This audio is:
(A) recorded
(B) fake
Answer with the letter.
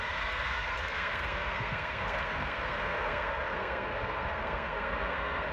B